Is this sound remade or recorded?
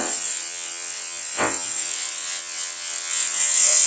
remade